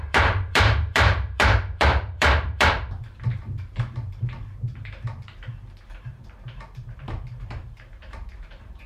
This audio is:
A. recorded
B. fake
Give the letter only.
B